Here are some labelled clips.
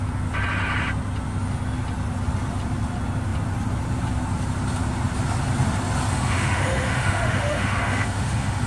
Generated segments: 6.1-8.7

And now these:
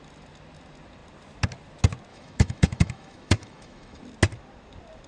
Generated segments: 2.1-4.0

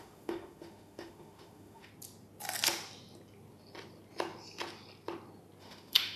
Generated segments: 0.0-1.9; 5.6-6.2

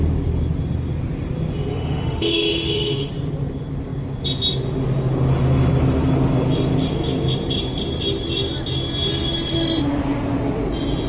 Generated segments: 1.7-3.1

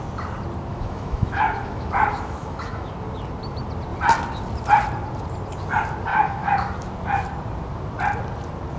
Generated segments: 0.7-2.9; 6.1-6.7

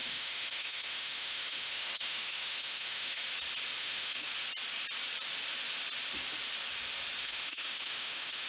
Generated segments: 0.0-3.2; 3.8-4.3; 7.2-8.5

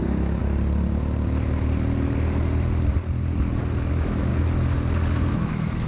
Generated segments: 0.0-0.4; 3.9-4.3; 5.3-5.9